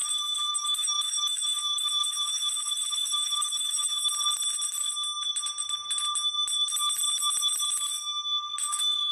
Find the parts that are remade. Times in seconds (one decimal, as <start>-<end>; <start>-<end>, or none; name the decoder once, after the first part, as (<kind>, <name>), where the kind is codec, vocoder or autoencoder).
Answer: 0.0-4.0 (autoencoder, DAC-VAE); 8.7-9.1